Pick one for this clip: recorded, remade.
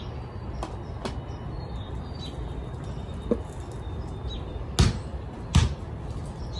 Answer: recorded